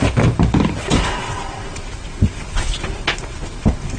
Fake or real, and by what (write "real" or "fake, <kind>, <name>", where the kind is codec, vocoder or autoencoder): real